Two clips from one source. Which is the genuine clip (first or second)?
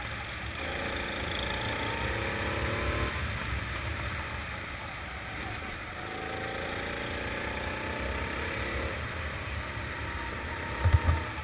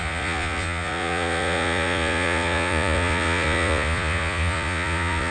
first